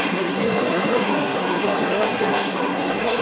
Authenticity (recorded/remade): remade